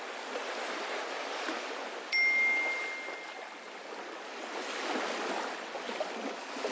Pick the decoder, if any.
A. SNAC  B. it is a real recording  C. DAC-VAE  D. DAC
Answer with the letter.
B